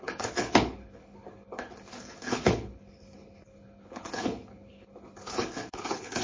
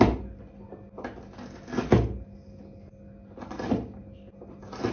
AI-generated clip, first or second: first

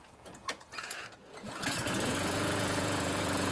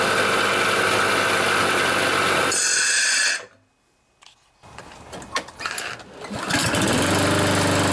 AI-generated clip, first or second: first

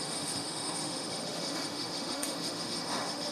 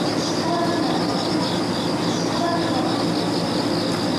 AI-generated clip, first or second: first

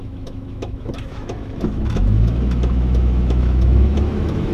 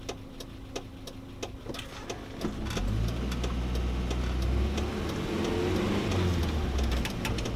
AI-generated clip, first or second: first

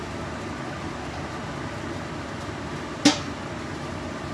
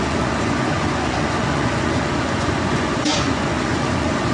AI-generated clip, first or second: second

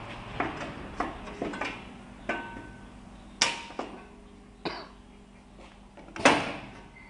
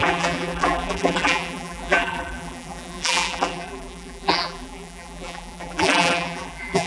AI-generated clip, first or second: second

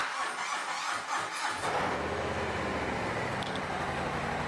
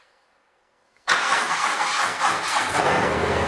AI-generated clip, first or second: second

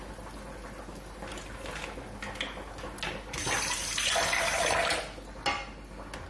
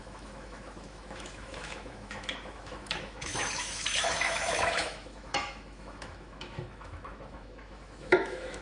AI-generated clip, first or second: second